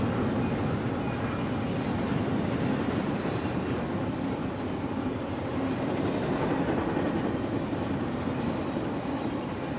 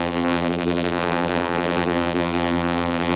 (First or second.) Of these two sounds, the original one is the first